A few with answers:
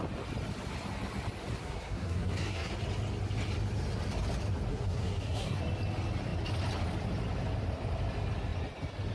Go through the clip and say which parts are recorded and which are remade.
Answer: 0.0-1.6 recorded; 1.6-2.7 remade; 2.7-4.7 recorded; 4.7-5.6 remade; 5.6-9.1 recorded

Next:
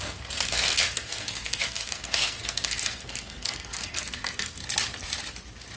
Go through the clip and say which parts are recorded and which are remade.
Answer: 0.0-4.6 remade; 4.6-5.8 recorded